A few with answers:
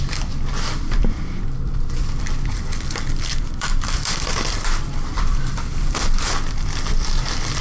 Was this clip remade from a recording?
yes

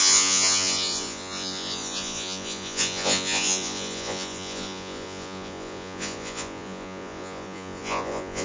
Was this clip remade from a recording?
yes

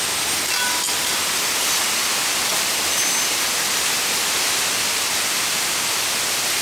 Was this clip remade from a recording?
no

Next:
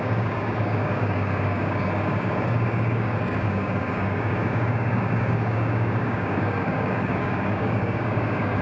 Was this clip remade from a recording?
yes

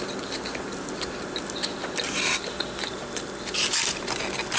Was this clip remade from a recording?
no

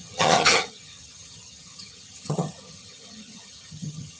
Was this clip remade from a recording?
yes